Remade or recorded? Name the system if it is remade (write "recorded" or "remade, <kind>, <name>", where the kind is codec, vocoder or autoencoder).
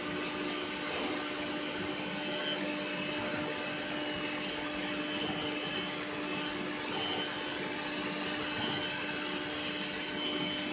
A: recorded